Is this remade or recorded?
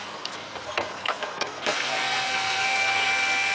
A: remade